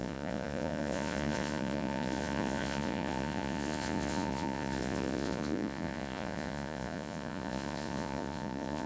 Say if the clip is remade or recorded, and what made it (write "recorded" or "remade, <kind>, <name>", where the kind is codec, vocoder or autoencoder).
remade, vocoder, Vocos